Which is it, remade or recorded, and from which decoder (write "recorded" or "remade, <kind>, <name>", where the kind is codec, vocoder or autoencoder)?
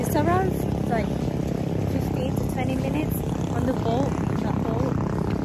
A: recorded